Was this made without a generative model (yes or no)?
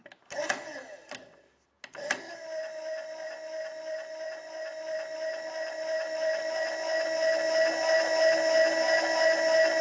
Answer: yes